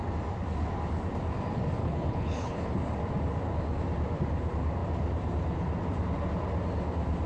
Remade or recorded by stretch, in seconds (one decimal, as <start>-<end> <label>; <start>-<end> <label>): 0.0-1.8 recorded; 1.8-2.7 remade; 2.7-7.3 recorded